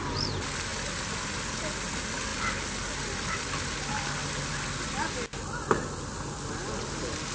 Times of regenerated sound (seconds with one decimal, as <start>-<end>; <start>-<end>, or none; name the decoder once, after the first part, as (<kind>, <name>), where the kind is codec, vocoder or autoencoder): none